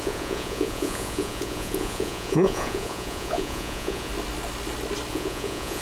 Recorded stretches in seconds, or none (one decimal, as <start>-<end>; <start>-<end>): 4.1-5.1